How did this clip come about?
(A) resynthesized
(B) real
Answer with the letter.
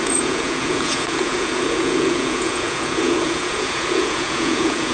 A